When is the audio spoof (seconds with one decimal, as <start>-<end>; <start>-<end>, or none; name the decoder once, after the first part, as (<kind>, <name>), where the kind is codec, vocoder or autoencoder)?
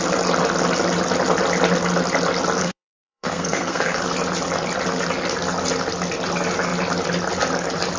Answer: 2.6-4.0 (codec, SNAC)